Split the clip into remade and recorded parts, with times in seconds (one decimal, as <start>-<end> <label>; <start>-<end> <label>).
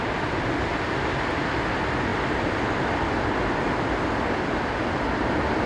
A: 0.0-5.7 recorded